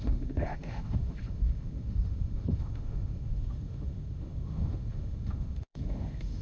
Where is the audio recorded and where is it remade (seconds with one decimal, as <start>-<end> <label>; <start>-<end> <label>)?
0.0-6.4 remade